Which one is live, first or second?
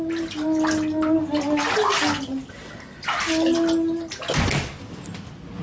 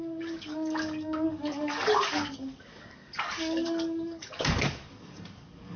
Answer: first